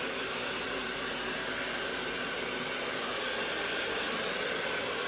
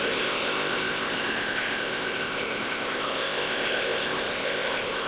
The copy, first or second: second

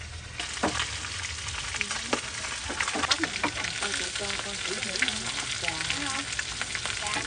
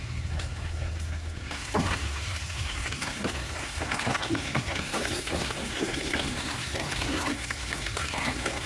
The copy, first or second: second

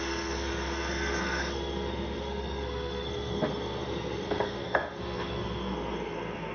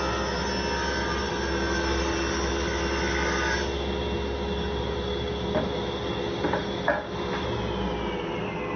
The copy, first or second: first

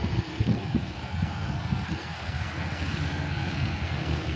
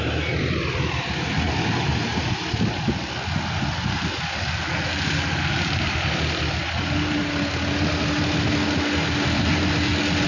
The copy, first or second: first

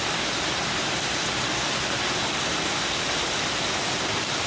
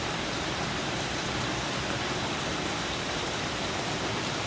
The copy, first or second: second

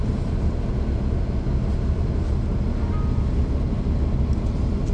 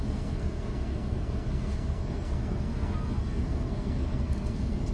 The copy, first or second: second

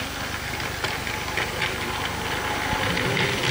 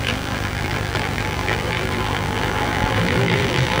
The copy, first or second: second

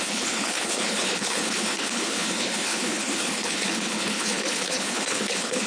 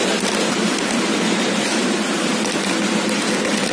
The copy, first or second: first